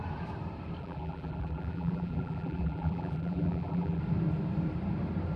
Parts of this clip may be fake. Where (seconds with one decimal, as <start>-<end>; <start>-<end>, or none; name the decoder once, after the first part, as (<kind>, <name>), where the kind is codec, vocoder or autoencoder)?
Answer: 0.8-4.0 (vocoder, BigVGAN v2)